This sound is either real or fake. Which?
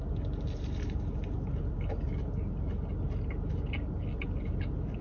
real